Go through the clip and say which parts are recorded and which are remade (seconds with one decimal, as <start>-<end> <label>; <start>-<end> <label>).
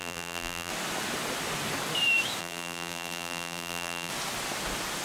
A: 0.0-0.7 remade; 0.7-2.4 recorded; 2.4-4.1 remade; 4.1-5.0 recorded